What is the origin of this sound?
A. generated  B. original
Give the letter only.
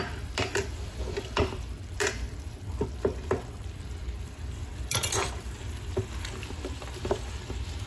A